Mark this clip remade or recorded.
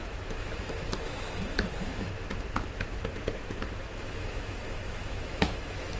remade